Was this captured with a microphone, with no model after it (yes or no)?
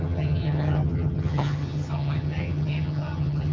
no